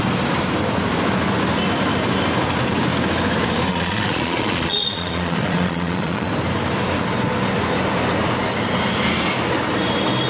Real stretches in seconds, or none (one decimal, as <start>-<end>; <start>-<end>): 0.0-3.7; 6.3-10.3